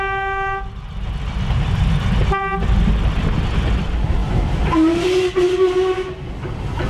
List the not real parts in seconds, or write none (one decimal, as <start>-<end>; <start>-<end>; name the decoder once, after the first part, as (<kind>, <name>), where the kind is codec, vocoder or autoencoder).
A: none